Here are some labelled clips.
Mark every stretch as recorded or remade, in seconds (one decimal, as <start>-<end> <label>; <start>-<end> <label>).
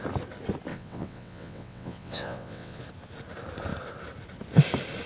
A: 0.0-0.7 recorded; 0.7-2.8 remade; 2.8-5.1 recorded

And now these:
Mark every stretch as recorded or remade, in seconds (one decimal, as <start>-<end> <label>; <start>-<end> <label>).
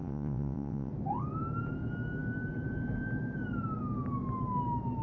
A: 0.0-0.9 remade; 0.9-5.0 recorded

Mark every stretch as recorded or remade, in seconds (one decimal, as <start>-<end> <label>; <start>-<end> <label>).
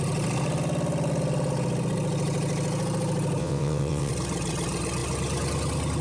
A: 0.0-3.4 recorded; 3.4-4.1 remade; 4.1-6.0 recorded